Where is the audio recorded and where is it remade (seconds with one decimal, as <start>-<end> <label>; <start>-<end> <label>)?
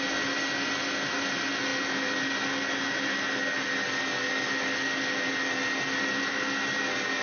0.0-7.2 recorded